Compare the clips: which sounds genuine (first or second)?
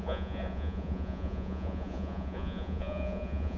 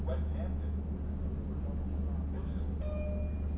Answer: second